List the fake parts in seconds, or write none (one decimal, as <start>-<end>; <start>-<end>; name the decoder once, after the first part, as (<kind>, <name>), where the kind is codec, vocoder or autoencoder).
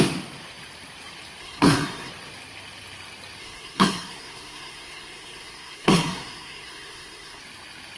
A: 1.4-2.1 (codec, SNAC); 3.4-7.4